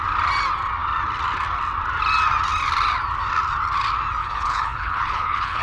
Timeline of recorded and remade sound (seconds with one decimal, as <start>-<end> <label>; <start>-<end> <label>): 0.0-4.2 recorded; 4.2-5.6 remade